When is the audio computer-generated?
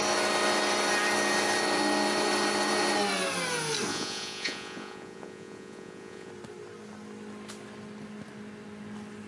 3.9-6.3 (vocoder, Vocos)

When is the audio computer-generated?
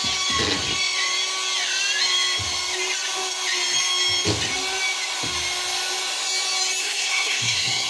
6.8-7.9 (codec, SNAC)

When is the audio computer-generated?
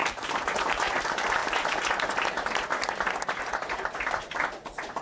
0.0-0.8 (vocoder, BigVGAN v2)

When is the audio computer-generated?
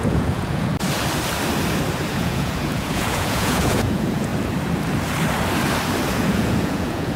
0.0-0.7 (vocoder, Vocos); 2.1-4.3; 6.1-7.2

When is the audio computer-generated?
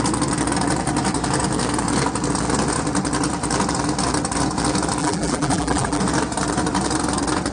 5.0-6.0 (vocoder, BigVGAN v2)